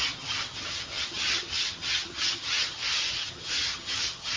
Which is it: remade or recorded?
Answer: remade